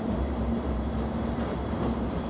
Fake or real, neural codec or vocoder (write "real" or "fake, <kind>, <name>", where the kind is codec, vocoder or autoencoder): fake, vocoder, BigVGAN v2